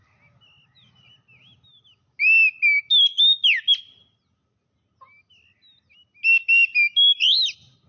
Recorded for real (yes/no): yes